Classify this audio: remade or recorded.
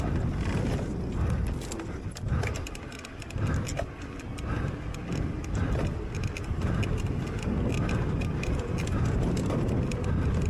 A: recorded